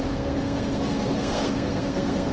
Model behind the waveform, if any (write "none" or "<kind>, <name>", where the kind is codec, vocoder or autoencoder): codec, SNAC